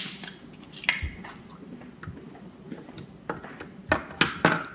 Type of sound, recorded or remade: recorded